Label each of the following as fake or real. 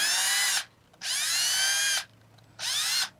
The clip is real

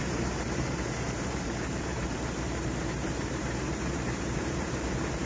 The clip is fake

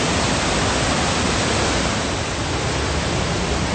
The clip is real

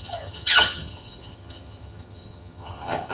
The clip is fake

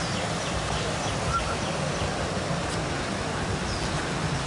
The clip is real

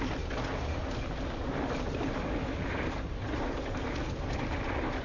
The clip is real